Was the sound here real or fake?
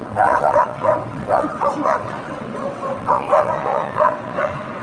fake